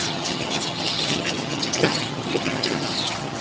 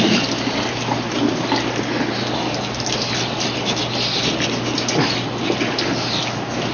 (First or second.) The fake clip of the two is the first